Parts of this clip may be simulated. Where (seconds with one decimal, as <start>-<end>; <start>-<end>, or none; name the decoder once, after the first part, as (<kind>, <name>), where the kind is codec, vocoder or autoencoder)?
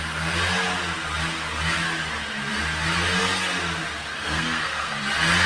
4.1-5.0 (codec, SNAC)